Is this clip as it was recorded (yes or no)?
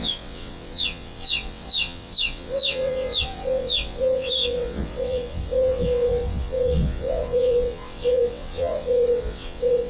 no